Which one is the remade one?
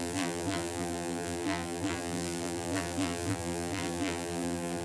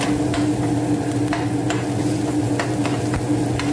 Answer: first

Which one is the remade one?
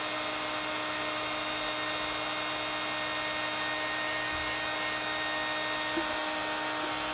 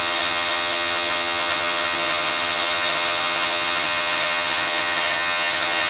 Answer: second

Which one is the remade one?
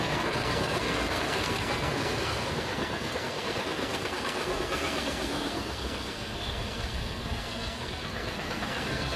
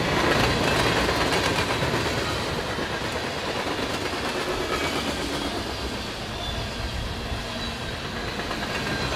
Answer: first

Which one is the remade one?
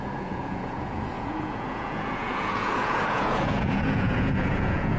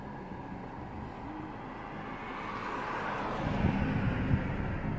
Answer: first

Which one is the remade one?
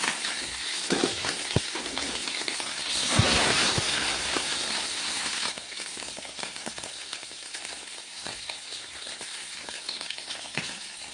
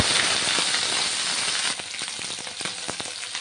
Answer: first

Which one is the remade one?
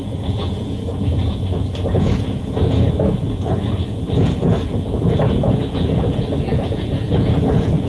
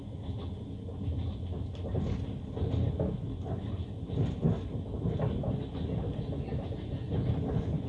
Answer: first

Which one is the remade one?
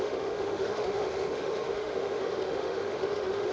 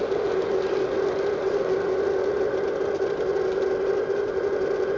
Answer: first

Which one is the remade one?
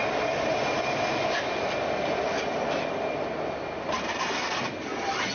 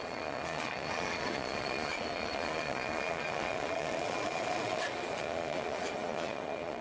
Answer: second